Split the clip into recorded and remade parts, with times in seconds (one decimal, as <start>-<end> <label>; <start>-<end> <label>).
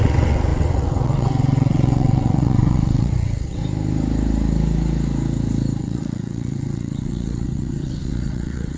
0.0-3.6 remade; 3.6-5.8 recorded; 5.8-8.8 remade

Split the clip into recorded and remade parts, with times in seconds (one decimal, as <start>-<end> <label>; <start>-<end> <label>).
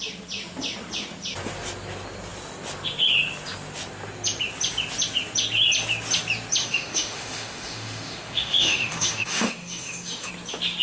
0.0-6.6 recorded; 6.6-10.3 remade; 10.3-10.8 recorded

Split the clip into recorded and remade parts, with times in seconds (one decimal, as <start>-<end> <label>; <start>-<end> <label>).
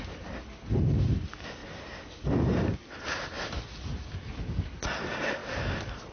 0.0-6.1 recorded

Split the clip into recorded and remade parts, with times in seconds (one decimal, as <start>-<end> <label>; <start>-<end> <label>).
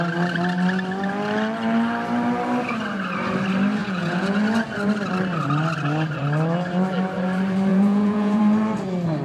0.0-3.8 recorded; 3.8-4.4 remade; 4.4-7.7 recorded; 7.7-8.4 remade; 8.4-9.2 recorded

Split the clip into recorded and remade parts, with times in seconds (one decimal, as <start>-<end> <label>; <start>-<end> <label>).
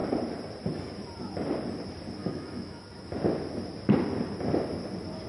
0.0-2.2 recorded; 2.2-2.8 remade; 2.8-5.3 recorded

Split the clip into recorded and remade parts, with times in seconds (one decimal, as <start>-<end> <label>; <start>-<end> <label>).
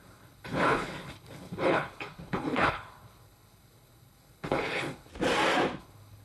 0.0-5.1 remade; 5.1-5.8 recorded; 5.8-6.2 remade